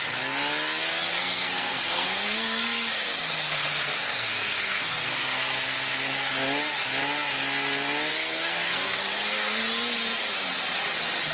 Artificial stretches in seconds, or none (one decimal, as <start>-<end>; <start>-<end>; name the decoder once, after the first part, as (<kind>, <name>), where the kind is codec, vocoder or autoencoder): 1.1-6.3 (codec, SNAC); 8.1-9.6